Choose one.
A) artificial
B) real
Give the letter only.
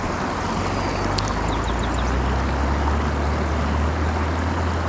B